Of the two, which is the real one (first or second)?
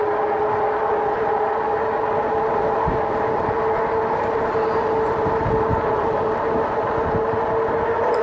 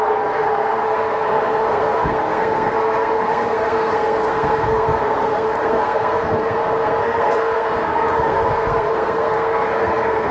first